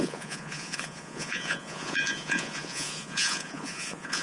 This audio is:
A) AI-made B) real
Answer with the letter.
A